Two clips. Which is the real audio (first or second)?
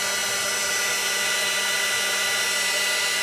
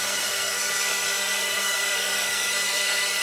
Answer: first